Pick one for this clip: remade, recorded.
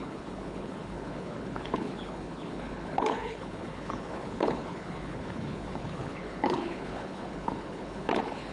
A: remade